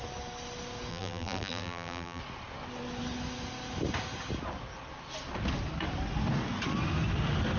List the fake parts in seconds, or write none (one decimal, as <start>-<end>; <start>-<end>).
0.9-2.2